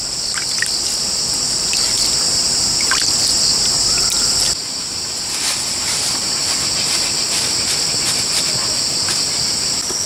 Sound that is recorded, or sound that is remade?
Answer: recorded